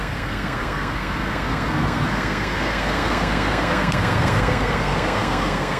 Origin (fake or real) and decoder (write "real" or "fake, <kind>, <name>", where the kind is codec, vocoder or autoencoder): fake, codec, SNAC